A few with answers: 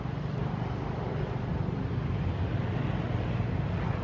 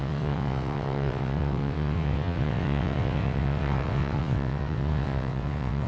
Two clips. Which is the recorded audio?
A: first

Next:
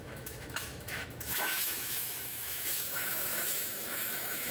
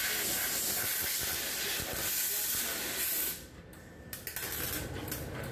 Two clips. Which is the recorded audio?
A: second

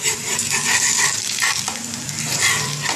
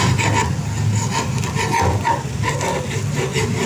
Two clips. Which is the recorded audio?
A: second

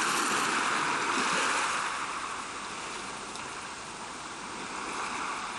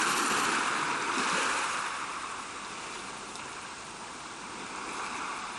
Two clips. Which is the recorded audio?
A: first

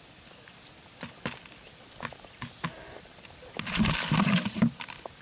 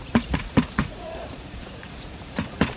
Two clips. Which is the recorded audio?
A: first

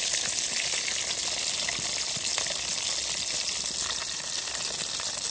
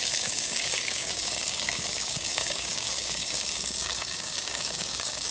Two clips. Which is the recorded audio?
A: first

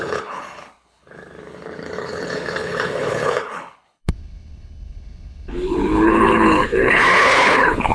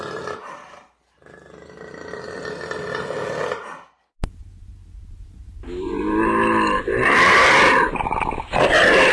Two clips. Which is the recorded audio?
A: second